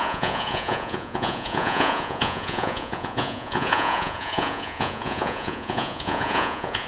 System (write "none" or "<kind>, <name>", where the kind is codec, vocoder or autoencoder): vocoder, Vocos